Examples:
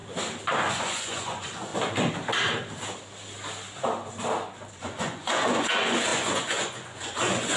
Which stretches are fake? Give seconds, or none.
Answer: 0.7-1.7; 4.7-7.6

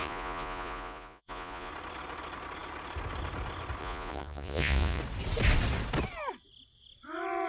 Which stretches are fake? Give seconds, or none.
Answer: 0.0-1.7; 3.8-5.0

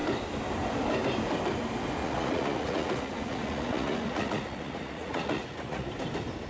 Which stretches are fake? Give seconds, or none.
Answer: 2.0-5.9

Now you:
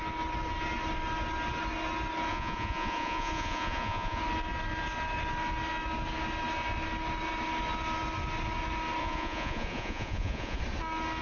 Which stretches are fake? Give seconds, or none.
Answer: 2.3-4.2; 9.0-10.6

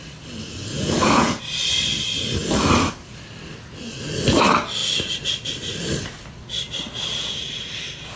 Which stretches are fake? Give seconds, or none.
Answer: 0.7-1.4

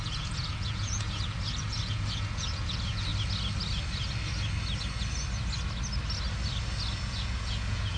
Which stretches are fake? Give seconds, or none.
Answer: 0.0-3.1; 7.0-8.0

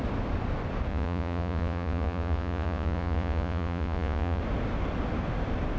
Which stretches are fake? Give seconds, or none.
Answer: 0.9-4.4

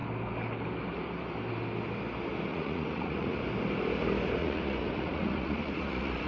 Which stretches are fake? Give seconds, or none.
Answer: 2.5-3.4; 4.4-6.3